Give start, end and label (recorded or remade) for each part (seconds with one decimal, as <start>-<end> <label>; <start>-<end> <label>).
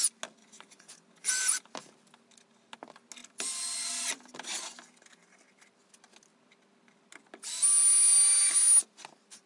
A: 0.0-0.4 recorded; 0.4-1.3 remade; 1.3-9.5 recorded